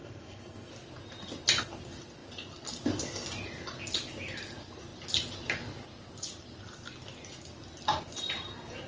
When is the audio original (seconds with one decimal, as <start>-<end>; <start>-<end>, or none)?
0.7-8.9